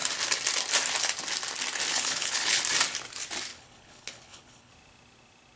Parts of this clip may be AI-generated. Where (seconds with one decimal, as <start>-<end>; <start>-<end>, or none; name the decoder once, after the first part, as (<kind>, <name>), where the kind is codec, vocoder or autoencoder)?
1.9-2.6 (codec, HILCodec); 3.5-4.7